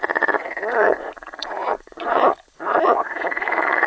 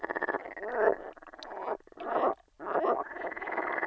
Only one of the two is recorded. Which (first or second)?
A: second